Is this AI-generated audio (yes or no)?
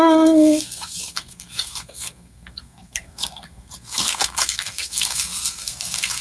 yes